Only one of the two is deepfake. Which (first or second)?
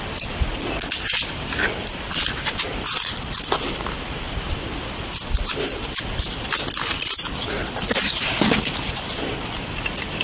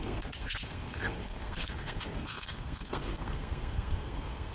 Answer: second